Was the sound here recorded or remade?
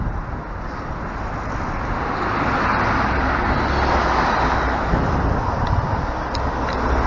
recorded